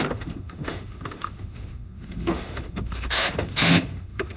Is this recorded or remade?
remade